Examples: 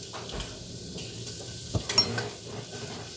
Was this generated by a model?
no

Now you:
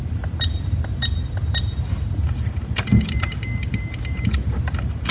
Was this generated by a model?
no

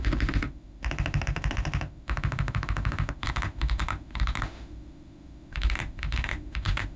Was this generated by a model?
yes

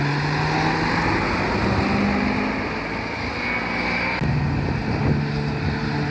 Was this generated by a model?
no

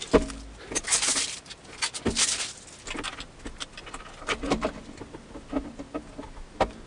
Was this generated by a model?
no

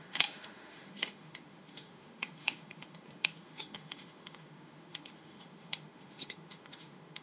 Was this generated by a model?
yes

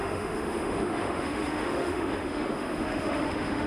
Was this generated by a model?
yes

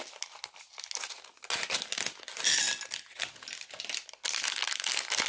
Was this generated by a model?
no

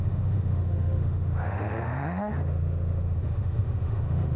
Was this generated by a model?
yes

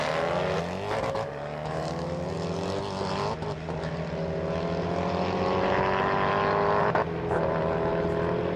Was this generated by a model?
no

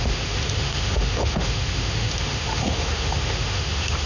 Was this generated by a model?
yes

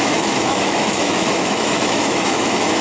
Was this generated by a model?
yes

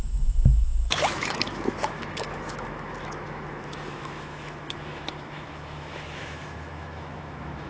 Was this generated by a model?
yes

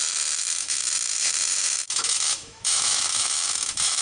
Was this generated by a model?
yes